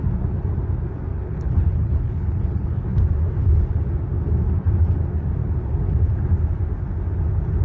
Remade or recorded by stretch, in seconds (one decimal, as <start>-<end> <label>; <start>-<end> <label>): 0.0-1.1 recorded; 1.1-2.8 remade; 2.8-7.6 recorded